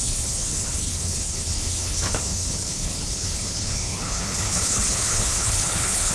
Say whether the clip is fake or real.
fake